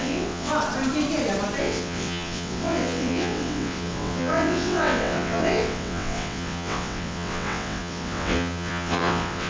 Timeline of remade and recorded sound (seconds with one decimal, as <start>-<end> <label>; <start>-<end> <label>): 0.0-0.5 remade; 0.5-1.6 recorded; 1.6-9.5 remade